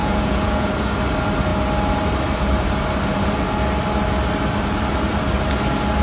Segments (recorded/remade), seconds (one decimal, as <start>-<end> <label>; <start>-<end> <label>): 0.0-0.7 remade; 0.7-6.0 recorded